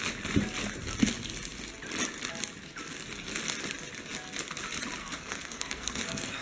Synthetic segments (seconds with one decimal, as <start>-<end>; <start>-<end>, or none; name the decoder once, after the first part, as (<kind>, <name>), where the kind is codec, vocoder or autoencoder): 5.0-6.4 (codec, SNAC)